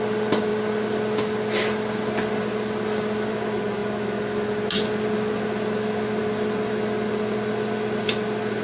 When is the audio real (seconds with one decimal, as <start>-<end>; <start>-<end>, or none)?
0.0-8.6